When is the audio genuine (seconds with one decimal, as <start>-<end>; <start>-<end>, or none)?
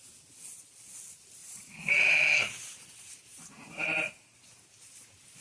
0.0-1.4; 4.6-5.4